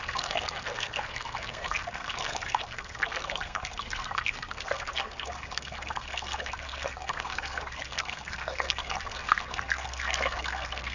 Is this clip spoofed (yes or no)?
yes